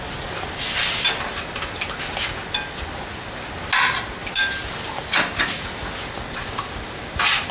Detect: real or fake real